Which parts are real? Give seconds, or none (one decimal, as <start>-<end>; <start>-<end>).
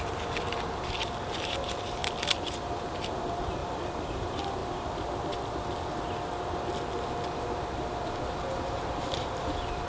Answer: 2.0-3.0; 3.6-4.1; 4.6-8.5